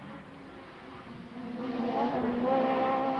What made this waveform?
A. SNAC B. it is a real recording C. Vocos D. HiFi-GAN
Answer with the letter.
B